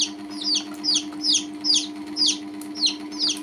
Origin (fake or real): real